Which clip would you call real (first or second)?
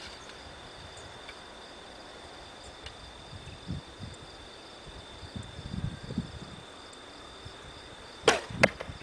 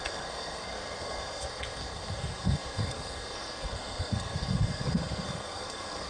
first